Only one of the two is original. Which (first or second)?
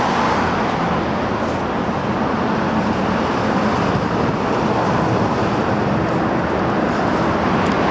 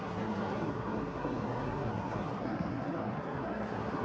first